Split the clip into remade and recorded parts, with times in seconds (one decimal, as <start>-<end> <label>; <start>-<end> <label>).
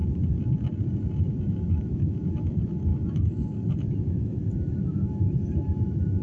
0.0-1.4 recorded; 1.4-6.2 remade